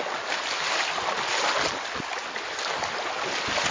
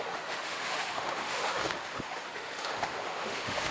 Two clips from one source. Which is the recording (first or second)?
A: first